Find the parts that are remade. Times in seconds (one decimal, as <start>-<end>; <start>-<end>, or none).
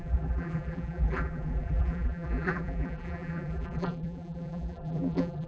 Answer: 0.0-5.5